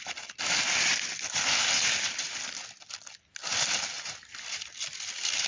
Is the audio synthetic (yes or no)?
no